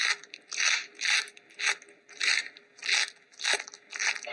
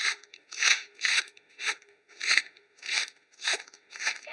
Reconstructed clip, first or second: second